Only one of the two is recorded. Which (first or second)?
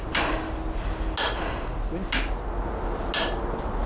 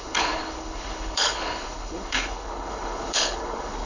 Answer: first